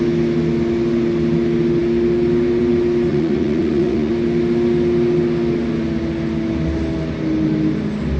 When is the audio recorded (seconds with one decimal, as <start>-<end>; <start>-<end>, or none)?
0.0-3.1; 4.1-8.2